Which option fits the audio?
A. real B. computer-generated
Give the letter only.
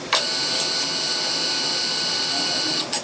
A